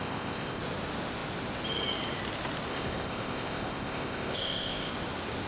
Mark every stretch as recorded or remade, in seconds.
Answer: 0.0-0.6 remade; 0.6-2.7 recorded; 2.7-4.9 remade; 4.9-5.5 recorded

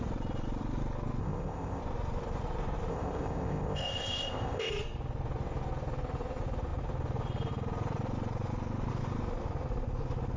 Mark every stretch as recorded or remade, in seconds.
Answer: 0.0-1.2 recorded; 1.2-1.8 remade; 1.8-2.9 recorded; 2.9-4.7 remade; 4.7-10.4 recorded